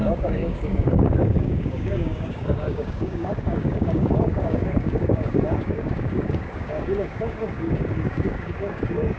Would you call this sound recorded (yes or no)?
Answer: no